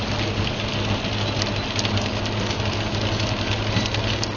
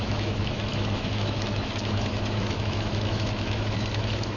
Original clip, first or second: first